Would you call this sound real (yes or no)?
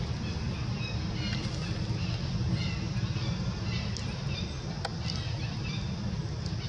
yes